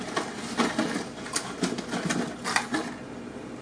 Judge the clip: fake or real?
real